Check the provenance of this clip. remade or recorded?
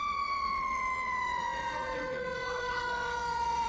remade